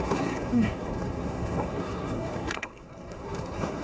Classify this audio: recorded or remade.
remade